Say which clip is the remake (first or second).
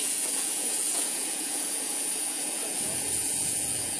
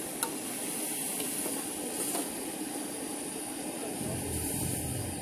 first